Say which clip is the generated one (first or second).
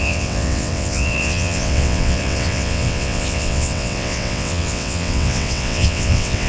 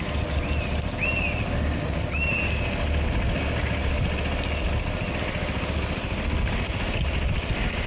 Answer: first